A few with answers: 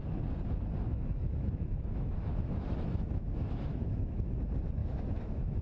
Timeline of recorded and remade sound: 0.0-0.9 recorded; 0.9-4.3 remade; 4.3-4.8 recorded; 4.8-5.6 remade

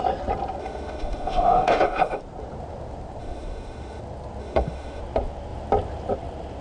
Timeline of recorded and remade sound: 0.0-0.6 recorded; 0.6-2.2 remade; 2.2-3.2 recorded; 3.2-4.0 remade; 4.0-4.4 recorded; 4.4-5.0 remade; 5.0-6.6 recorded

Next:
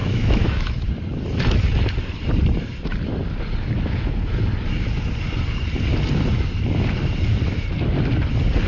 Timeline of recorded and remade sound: 0.0-0.9 remade; 0.9-8.7 recorded

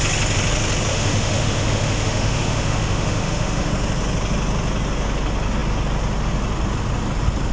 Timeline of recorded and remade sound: 0.0-0.9 recorded; 0.9-3.7 remade; 3.7-7.5 recorded